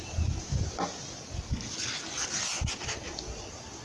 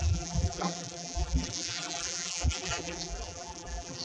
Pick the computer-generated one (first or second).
second